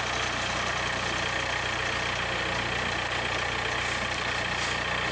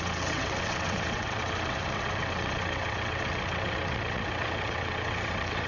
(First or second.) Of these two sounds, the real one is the first